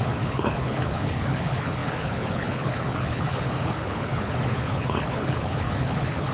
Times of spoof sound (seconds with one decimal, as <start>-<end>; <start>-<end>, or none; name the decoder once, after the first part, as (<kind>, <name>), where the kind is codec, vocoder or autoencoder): 0.0-6.3 (codec, HILCodec)

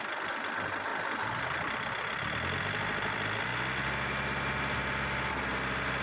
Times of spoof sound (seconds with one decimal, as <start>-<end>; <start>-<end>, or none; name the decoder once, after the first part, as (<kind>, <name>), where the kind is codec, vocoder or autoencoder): none

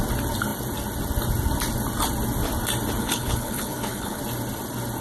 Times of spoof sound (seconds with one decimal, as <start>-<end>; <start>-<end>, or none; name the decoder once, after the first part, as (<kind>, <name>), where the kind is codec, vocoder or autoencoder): 3.0-4.2 (codec, HILCodec)

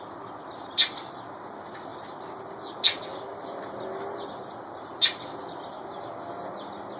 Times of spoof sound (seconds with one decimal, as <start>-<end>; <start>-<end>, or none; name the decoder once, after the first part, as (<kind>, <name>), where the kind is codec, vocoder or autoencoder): none